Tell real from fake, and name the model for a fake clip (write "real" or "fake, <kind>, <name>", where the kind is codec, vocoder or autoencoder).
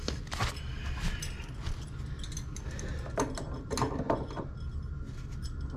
real